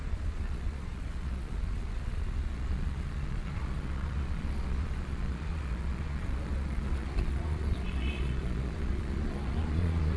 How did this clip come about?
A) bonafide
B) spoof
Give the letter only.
B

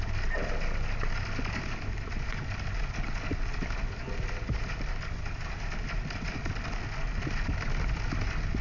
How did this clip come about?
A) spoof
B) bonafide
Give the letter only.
B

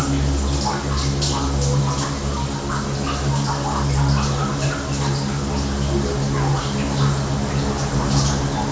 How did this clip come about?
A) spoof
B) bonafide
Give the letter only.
B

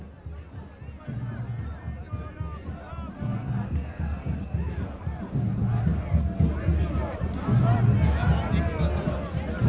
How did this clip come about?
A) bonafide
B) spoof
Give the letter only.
A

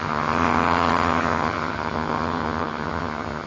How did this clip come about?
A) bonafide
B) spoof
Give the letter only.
B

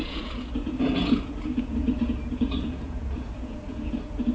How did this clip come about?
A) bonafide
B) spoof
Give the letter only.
B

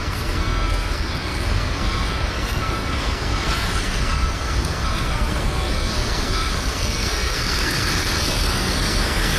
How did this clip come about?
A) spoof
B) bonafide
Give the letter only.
A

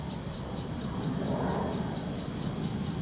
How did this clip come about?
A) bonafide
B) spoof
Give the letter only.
A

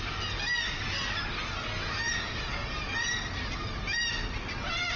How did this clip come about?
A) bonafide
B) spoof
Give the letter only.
A